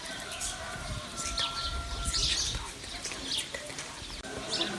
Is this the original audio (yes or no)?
yes